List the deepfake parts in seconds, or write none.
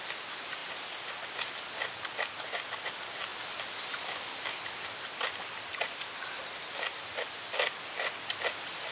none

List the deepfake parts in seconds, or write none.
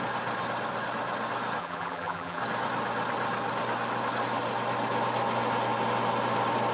1.6-2.4 (vocoder, BigVGAN v2)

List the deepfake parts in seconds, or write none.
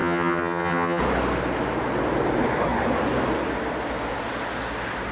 0.0-1.0 (vocoder, HiFi-GAN)